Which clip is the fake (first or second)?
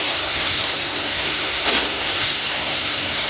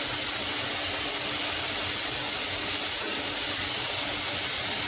first